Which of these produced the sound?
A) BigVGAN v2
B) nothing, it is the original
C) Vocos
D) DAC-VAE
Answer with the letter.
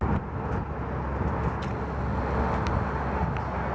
B